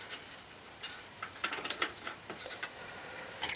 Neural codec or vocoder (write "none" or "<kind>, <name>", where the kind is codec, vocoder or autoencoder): vocoder, BigVGAN v2